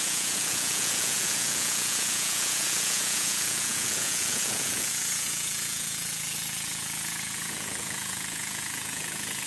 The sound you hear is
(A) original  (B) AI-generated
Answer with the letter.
B